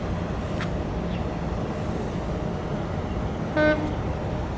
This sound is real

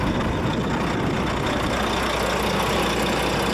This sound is real